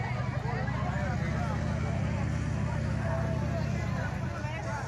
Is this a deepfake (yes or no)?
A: no